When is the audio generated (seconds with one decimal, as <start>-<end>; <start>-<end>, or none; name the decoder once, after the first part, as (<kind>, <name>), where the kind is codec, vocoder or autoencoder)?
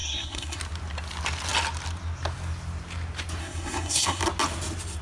0.0-0.6 (codec, SNAC); 3.4-4.2